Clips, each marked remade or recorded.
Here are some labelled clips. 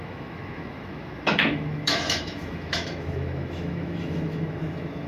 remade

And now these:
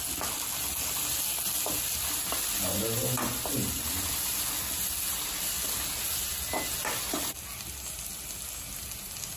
recorded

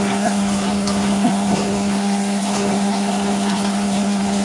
remade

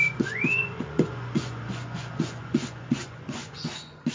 remade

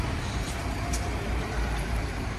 remade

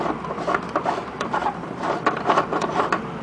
remade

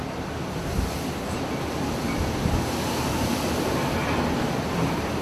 recorded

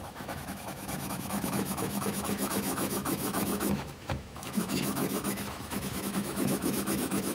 remade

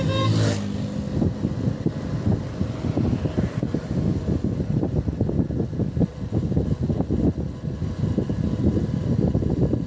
recorded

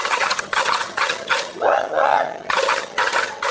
remade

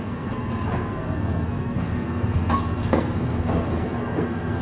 remade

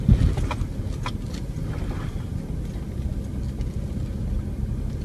recorded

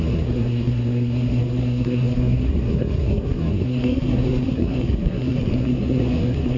remade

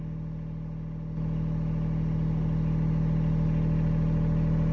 recorded